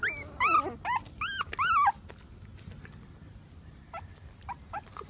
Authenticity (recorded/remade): recorded